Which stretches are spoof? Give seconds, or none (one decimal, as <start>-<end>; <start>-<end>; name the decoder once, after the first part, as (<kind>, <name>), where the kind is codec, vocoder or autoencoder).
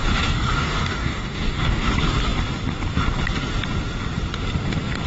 0.0-1.9 (codec, DAC)